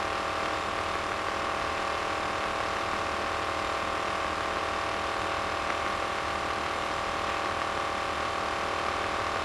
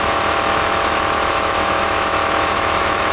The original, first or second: first